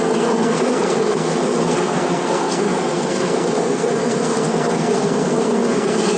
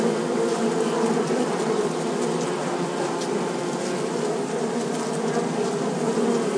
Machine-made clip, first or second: first